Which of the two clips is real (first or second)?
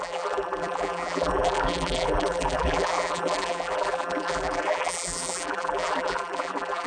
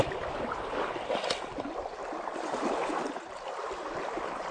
second